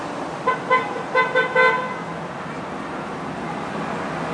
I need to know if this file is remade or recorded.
recorded